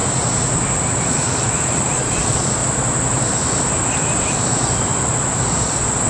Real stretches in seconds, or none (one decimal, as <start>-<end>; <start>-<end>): 0.0-1.1; 2.6-5.6